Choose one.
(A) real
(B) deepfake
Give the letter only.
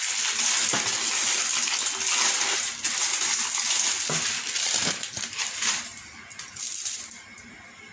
A